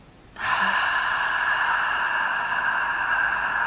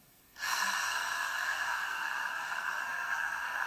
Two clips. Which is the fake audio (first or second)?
second